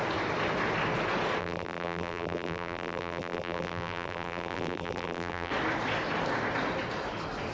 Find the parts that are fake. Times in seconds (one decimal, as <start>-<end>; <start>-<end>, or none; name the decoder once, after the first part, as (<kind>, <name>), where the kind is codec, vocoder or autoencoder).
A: 1.4-5.5 (vocoder, BigVGAN v2)